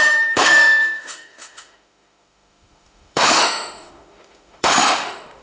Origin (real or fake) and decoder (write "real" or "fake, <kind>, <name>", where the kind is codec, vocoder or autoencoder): fake, autoencoder, DAC-VAE